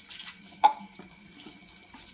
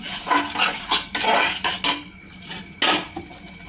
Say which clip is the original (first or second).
second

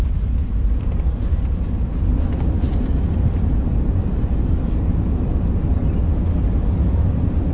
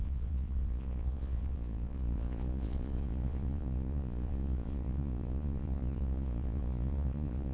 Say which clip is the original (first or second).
first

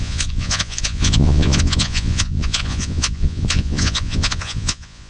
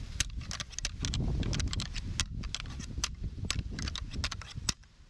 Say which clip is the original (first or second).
second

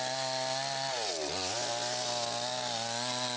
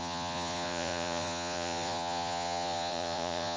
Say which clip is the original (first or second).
first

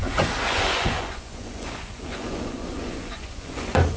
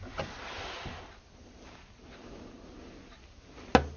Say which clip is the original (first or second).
second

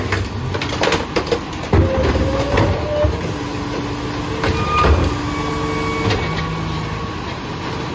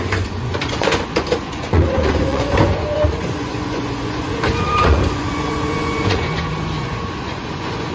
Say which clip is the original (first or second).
first